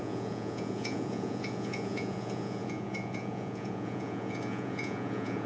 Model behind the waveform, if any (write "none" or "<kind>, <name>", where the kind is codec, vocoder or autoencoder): vocoder, Vocos